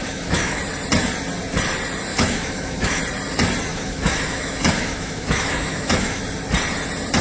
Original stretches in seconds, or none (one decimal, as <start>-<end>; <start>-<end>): 0.6-2.1; 3.0-3.7; 6.2-7.2